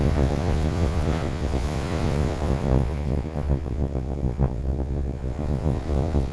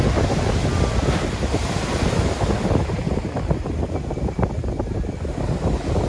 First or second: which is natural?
second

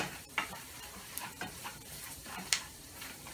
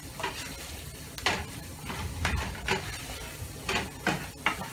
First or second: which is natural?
second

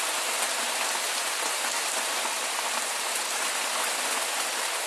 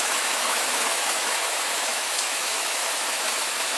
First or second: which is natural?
first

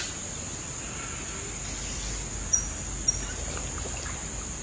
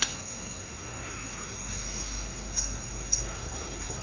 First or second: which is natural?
first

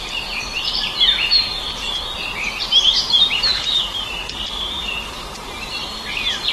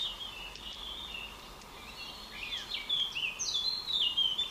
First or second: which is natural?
second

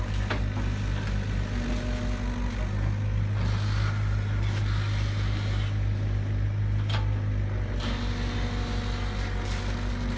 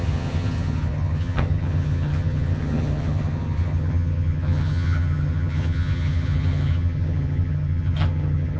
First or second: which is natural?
first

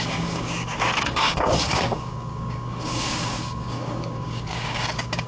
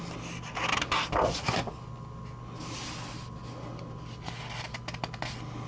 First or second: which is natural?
second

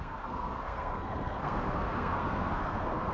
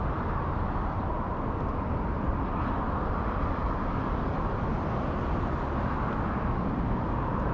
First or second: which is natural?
second